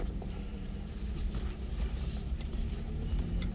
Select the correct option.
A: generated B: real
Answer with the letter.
A